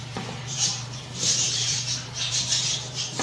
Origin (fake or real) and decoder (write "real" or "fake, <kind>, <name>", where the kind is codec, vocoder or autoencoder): fake, vocoder, BigVGAN v2